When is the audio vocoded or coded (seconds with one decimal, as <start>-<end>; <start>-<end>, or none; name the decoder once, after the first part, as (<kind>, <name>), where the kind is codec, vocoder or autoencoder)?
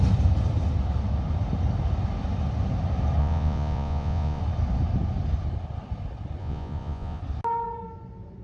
3.2-4.4 (vocoder, Vocos); 6.4-7.2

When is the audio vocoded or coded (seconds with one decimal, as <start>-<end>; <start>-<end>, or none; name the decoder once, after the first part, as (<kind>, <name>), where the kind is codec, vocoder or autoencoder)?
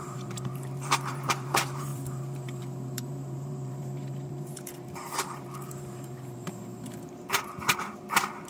0.0-8.5 (vocoder, BigVGAN v2)